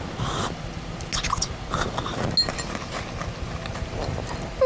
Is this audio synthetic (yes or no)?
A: no